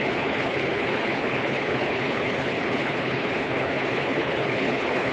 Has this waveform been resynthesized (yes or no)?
yes